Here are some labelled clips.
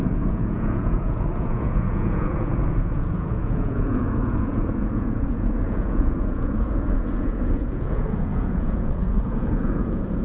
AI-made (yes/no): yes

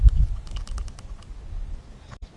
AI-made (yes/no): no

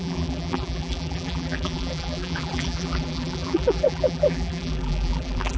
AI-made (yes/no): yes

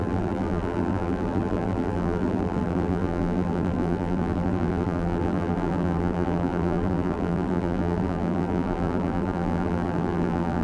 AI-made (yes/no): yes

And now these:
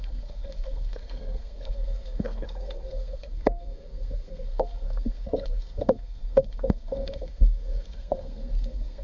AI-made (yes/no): yes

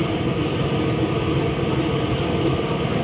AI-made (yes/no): no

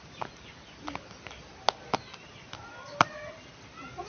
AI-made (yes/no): no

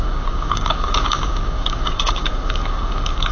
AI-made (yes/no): yes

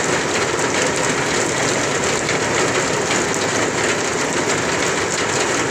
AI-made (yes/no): no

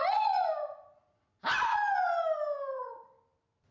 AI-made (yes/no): no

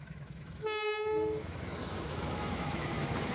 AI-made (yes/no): yes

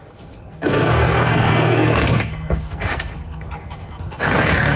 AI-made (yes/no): yes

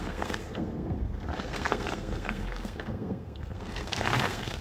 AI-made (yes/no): yes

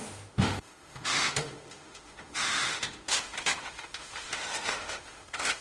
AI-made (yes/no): yes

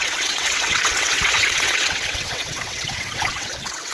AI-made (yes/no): yes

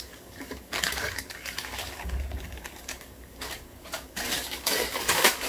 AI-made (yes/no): yes